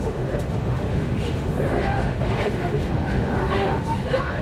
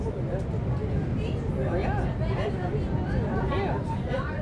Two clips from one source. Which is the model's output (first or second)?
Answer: first